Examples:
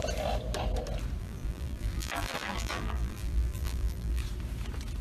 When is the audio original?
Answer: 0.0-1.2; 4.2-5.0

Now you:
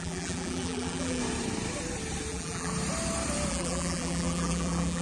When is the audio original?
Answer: 1.2-2.3; 2.7-3.5